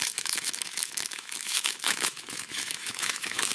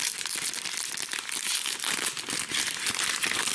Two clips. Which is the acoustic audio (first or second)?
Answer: second